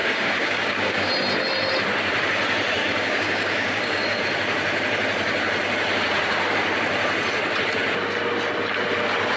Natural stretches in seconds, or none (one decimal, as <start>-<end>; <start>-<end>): 1.1-2.8; 4.2-9.4